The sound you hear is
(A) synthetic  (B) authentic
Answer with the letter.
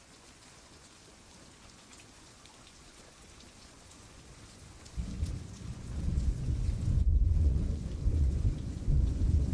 A